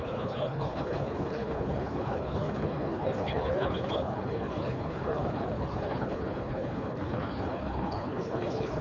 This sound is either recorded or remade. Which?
remade